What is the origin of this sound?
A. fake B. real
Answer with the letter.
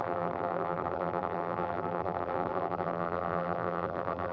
A